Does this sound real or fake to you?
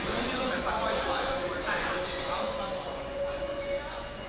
fake